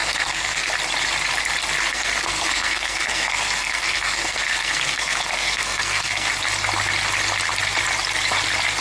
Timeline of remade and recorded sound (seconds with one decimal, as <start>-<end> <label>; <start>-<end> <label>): 0.0-0.7 remade; 0.7-1.9 recorded; 1.9-6.3 remade; 6.3-8.8 recorded